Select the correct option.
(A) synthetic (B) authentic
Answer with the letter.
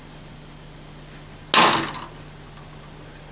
B